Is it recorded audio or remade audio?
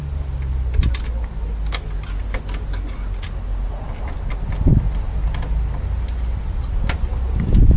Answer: recorded